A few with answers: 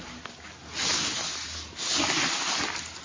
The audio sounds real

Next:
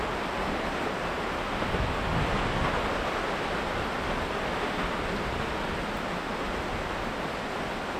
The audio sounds real